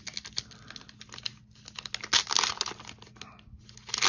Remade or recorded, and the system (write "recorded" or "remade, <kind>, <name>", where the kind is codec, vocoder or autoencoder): recorded